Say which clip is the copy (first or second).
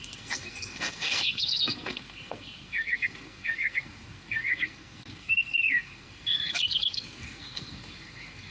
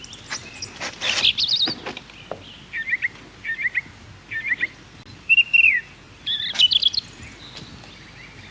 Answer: first